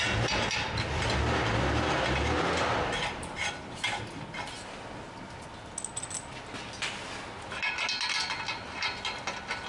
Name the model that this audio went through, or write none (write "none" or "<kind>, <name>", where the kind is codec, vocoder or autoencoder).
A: none